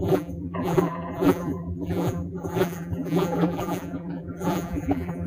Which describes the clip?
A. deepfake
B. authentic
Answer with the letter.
A